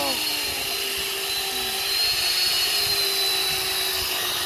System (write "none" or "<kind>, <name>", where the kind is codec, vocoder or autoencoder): none